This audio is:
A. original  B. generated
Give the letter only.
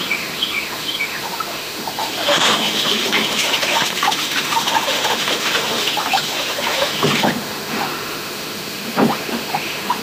B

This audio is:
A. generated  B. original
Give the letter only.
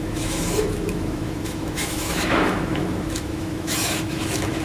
A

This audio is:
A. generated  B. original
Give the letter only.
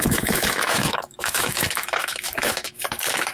A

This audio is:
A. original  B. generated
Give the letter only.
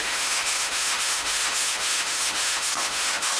B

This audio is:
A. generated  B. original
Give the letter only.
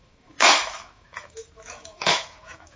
A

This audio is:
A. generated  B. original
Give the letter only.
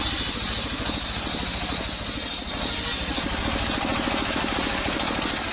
B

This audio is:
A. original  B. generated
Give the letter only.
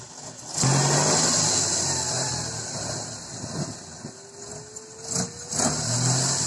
A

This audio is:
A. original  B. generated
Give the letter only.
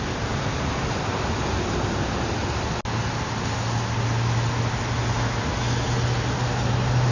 A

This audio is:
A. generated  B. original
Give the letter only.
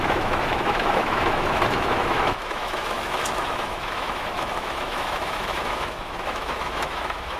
A